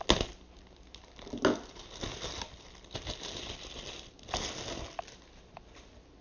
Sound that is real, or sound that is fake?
real